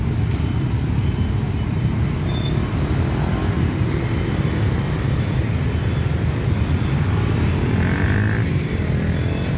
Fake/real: real